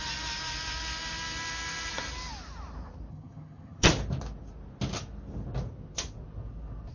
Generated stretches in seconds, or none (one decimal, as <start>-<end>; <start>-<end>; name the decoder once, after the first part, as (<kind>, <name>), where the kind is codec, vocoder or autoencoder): 3.1-3.9 (vocoder, HiFi-GAN)